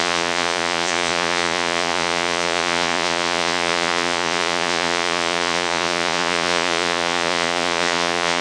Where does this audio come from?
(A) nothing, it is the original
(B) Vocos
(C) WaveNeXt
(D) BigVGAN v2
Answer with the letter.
B